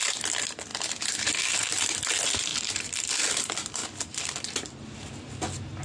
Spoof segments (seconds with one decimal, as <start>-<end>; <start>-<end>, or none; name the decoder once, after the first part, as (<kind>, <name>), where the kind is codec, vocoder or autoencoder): 0.7-1.7 (vocoder, BigVGAN v2); 2.5-3.4